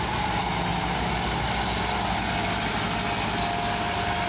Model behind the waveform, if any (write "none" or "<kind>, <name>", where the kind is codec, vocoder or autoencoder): none